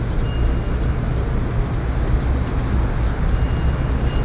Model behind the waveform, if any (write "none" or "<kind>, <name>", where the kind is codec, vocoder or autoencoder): none